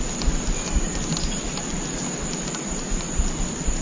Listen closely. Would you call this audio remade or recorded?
recorded